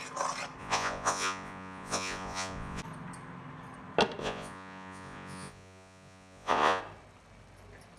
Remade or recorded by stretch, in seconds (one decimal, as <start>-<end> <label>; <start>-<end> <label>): 0.0-0.6 recorded; 0.6-2.8 remade; 2.8-4.2 recorded; 4.2-6.8 remade; 6.8-8.0 recorded